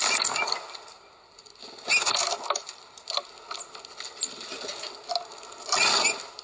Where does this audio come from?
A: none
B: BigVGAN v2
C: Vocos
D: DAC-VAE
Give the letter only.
A